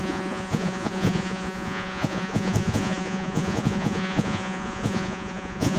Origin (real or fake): fake